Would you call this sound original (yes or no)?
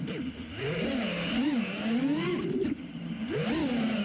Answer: yes